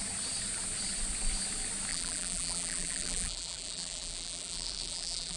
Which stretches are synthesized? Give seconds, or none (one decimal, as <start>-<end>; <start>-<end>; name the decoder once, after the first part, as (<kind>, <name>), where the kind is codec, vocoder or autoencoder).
1.9-5.4 (vocoder, BigVGAN v2)